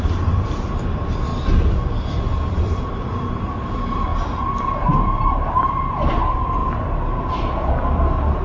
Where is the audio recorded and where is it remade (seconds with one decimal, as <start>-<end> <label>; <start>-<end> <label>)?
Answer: 0.0-1.3 remade; 1.3-2.4 recorded; 2.4-8.4 remade